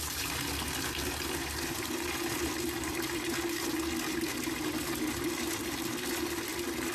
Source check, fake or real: real